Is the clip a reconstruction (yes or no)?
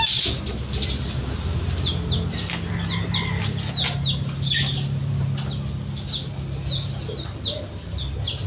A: no